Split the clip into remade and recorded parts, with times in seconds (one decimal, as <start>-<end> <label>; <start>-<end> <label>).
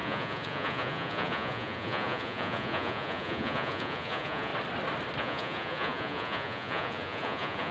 0.0-4.5 remade; 4.5-5.2 recorded; 5.2-7.7 remade